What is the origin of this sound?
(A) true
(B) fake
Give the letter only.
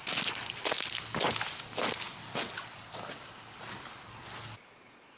A